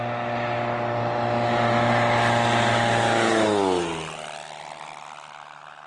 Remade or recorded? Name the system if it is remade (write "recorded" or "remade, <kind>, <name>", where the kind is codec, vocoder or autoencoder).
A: recorded